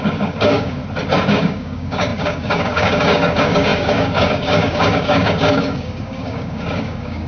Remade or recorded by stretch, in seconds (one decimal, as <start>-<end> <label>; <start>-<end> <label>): 0.0-0.8 remade; 0.8-1.3 recorded; 1.3-7.3 remade